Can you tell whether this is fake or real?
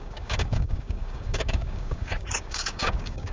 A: fake